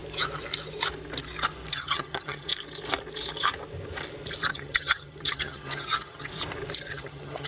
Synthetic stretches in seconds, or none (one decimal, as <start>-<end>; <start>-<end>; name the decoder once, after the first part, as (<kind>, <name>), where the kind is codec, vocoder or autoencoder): 1.7-2.5 (vocoder, HiFi-GAN); 4.5-6.3; 6.9-7.5